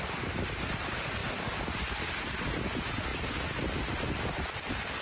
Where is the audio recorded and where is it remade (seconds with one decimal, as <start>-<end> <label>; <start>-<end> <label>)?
0.0-5.0 recorded